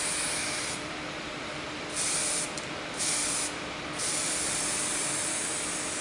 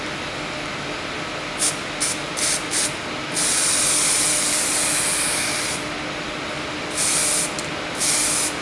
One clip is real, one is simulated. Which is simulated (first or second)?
first